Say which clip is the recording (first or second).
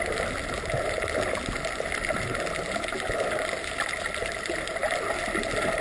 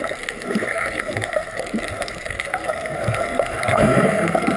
first